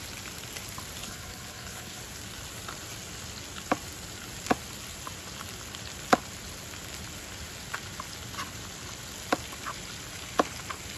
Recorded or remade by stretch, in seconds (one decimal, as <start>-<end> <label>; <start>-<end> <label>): 0.0-1.0 recorded; 1.0-2.0 remade; 2.0-11.0 recorded

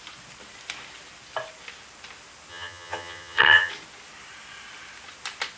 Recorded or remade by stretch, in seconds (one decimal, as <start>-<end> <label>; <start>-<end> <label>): 0.0-2.5 recorded; 2.5-3.7 remade; 3.7-5.6 recorded

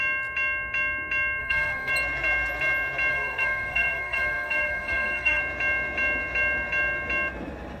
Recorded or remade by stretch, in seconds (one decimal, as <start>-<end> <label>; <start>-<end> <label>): 0.0-1.4 recorded; 1.4-1.9 remade; 1.9-3.1 recorded; 3.1-5.4 remade; 5.4-7.8 recorded

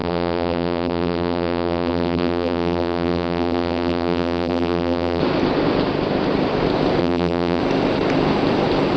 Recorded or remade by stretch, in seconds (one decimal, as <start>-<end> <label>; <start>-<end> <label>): 0.0-5.2 remade; 5.2-7.0 recorded; 7.0-7.6 remade; 7.6-9.0 recorded

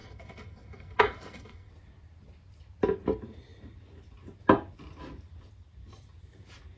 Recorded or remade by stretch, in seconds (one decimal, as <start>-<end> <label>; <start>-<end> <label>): 0.0-1.7 remade; 1.7-6.8 recorded

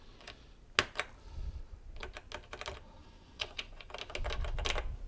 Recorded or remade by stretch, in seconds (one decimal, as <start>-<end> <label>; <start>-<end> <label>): 0.0-3.0 recorded; 3.0-3.9 remade; 3.9-5.1 recorded

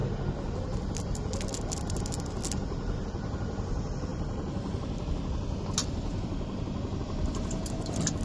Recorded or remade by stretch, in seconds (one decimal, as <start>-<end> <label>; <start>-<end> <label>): 0.0-8.2 recorded